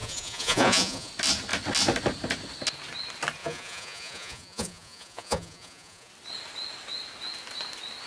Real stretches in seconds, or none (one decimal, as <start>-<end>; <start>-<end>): 1.1-3.4; 6.1-8.1